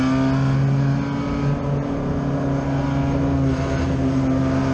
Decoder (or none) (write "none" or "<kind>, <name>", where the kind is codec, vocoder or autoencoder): none